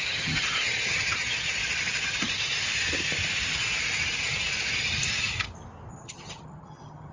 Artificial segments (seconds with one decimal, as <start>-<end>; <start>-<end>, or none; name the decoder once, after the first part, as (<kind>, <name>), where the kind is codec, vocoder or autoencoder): 0.0-1.6 (vocoder, HiFi-GAN); 5.9-7.1